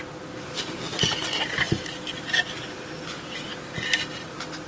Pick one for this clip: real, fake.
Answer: real